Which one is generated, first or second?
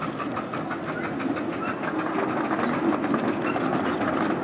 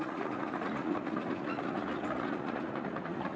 second